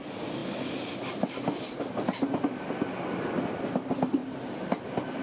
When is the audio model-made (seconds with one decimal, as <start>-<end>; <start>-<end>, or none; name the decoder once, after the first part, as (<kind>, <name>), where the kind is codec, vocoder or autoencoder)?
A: none

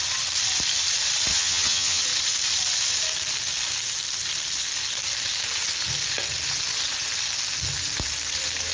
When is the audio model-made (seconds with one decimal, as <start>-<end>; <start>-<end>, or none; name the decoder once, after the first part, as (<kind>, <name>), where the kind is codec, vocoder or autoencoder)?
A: 1.3-2.0 (vocoder, HiFi-GAN)

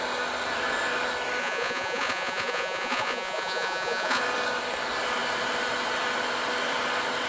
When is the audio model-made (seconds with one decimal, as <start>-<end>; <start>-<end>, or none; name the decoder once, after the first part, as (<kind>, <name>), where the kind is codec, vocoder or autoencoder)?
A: 1.4-4.2 (vocoder, Vocos)

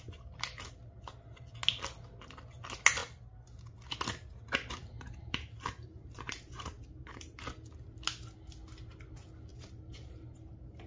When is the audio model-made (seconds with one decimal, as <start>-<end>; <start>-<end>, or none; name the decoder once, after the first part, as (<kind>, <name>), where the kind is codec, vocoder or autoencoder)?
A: 4.8-7.4 (vocoder, BigVGAN v2); 9.5-10.9